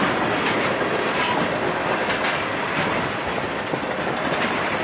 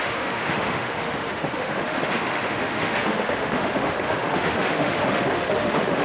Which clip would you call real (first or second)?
first